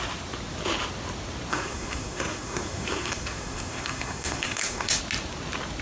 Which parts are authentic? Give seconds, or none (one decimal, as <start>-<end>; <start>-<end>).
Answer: 0.0-1.5; 5.0-5.8